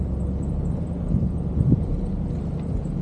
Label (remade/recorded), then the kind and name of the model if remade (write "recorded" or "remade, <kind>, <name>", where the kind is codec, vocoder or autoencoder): recorded